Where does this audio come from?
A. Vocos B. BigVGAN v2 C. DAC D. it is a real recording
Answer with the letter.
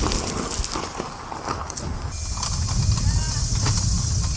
D